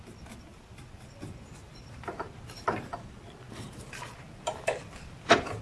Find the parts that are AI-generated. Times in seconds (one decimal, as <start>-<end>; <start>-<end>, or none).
0.0-2.9; 3.7-5.6